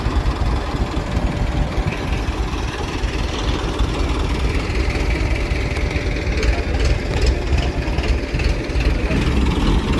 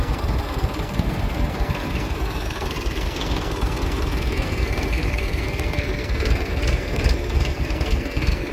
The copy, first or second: second